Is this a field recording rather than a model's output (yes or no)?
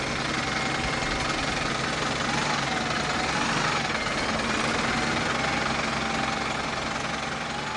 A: yes